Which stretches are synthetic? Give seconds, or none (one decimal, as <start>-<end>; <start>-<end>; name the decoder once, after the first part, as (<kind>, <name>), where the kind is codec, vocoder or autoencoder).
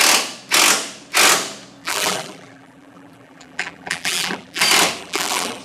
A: 1.8-4.6 (vocoder, BigVGAN v2); 5.0-5.6